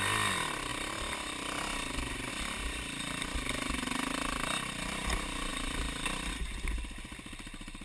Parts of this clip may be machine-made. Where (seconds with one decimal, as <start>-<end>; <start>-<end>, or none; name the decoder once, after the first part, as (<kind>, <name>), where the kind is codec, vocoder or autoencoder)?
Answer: none